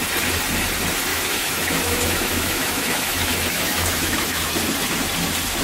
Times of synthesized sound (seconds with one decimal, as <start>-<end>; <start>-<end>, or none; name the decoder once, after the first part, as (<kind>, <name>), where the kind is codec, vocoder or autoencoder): 1.1-4.4 (autoencoder, DAC-VAE)